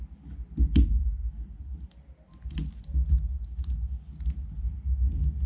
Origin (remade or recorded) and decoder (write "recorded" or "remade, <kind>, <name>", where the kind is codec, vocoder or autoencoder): recorded